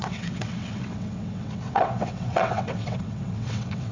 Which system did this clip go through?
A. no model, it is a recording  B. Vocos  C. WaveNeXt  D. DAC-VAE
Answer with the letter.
C